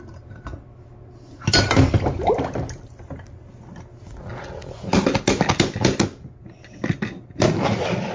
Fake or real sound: real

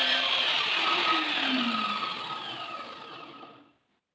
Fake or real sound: real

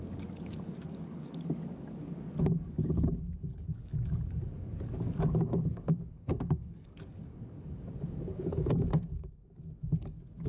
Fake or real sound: fake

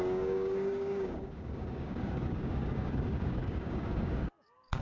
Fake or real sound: fake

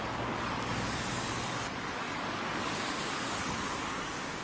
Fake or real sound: fake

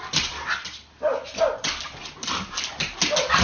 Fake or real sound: real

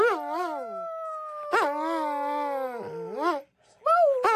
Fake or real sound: real